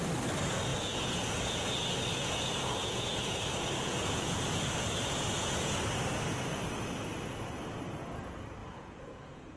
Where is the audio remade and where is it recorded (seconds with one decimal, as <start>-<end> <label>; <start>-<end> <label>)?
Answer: 0.0-0.7 recorded; 0.7-5.8 remade; 5.8-8.6 recorded; 8.6-9.6 remade